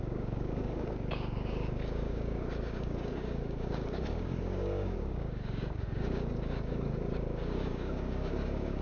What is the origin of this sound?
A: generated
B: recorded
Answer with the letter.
A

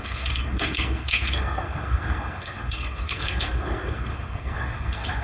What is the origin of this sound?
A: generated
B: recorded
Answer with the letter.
A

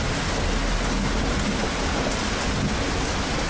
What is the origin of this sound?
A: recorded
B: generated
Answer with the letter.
A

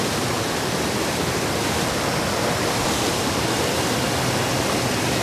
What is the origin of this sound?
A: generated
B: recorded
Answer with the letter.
B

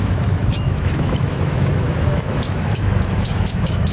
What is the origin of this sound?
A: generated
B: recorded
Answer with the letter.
A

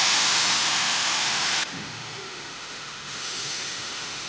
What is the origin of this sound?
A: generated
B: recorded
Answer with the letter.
A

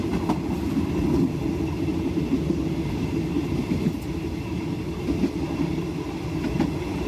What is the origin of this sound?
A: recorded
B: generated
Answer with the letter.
A